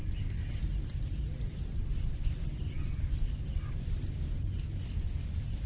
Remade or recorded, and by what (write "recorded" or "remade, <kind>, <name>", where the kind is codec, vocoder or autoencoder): recorded